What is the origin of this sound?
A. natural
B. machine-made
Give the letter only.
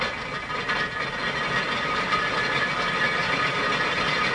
A